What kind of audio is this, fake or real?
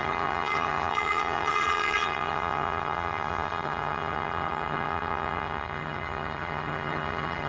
fake